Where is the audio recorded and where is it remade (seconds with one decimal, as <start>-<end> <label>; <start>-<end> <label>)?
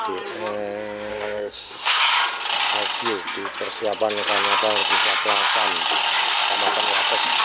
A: 0.0-1.1 recorded; 1.1-2.0 remade; 2.0-7.4 recorded